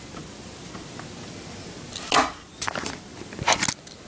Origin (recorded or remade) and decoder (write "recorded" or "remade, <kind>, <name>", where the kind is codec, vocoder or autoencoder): recorded